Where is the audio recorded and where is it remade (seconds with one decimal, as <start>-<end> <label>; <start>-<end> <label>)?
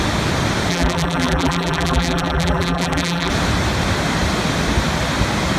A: 0.0-0.7 recorded; 0.7-3.3 remade; 3.3-5.6 recorded